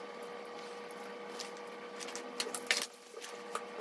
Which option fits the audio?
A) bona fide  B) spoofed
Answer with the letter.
A